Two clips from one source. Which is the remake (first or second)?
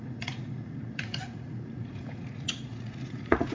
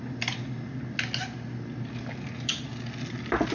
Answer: first